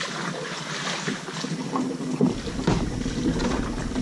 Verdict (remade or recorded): recorded